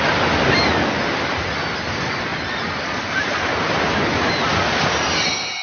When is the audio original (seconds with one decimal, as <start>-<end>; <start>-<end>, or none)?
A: 0.0-5.6